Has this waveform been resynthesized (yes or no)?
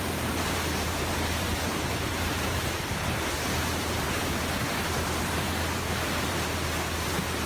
yes